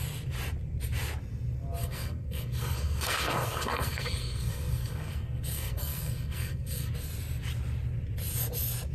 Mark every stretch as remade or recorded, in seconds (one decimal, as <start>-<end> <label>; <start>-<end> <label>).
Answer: 0.0-1.8 recorded; 1.8-6.9 remade; 6.9-8.9 recorded